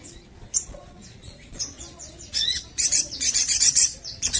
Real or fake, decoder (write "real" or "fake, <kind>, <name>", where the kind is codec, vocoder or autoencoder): fake, vocoder, Vocos